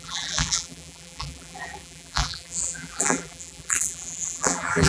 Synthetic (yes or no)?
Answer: yes